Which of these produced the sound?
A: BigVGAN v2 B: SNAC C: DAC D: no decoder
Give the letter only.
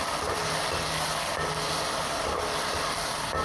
D